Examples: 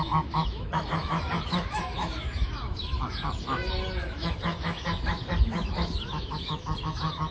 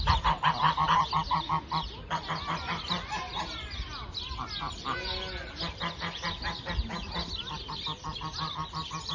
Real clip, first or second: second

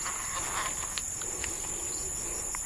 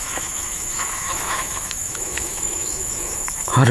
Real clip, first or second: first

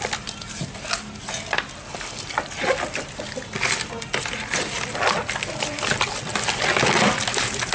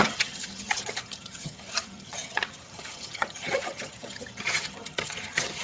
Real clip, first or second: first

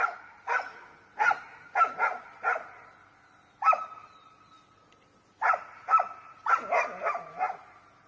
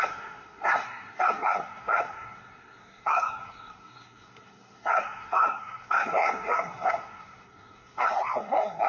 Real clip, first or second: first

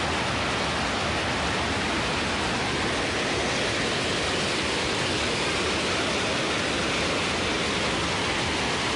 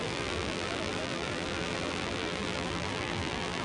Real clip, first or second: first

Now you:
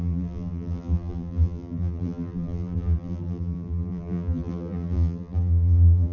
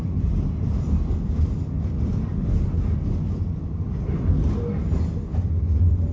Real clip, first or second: second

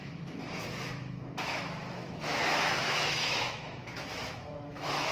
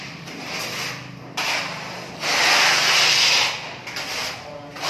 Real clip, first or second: second